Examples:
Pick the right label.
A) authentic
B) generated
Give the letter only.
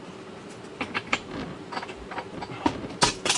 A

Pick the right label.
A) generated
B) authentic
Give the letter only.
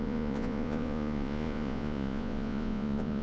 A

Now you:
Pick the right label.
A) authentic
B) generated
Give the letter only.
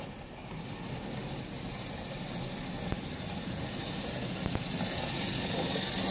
A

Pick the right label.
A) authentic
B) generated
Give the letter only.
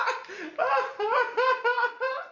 A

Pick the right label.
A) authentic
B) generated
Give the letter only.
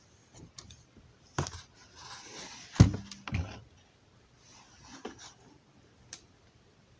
A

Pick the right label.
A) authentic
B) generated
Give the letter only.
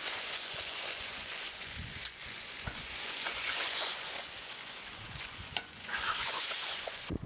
B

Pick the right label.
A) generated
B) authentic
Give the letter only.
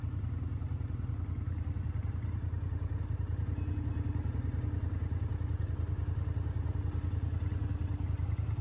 B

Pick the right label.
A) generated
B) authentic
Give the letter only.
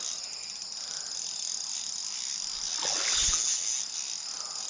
B